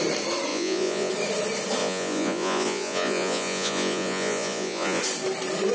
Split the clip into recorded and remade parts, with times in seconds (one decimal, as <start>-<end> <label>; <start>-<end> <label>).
0.0-0.5 recorded; 0.5-1.1 remade; 1.1-1.8 recorded; 1.8-5.0 remade; 5.0-5.7 recorded

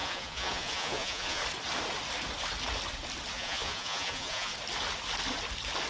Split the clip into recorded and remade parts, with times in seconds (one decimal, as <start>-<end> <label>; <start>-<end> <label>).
0.0-1.4 remade; 1.4-3.3 recorded; 3.3-4.5 remade; 4.5-5.9 recorded

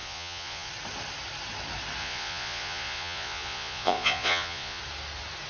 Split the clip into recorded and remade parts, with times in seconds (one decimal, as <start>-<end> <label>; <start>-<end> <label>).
0.0-0.7 remade; 0.7-2.0 recorded; 2.0-4.8 remade; 4.8-5.5 recorded

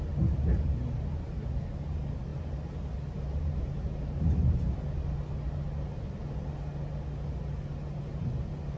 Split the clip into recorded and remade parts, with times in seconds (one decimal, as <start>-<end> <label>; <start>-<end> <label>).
0.0-8.8 recorded

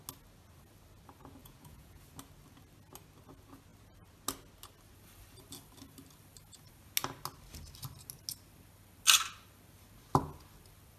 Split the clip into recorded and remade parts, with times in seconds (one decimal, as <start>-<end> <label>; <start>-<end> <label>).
0.0-1.4 recorded; 1.4-2.0 remade; 2.0-11.0 recorded

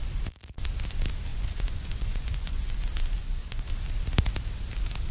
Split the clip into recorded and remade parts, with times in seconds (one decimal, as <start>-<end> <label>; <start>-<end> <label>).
0.0-1.3 recorded; 1.3-2.7 remade; 2.7-3.2 recorded; 3.2-3.7 remade; 3.7-5.1 recorded

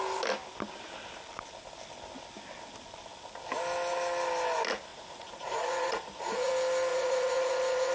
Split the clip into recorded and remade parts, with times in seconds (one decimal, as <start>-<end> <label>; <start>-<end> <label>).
0.0-4.9 recorded; 4.9-6.5 remade; 6.5-6.9 recorded; 6.9-7.9 remade